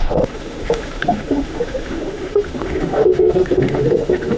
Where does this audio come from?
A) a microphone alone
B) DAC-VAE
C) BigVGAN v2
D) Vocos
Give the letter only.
B